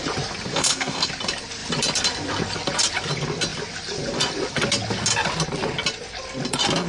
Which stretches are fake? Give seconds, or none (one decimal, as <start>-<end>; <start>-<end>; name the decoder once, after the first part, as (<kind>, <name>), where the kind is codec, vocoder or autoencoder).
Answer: 0.5-1.1 (codec, SNAC)